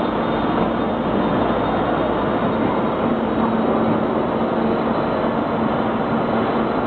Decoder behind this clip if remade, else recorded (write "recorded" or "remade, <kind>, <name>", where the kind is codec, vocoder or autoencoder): recorded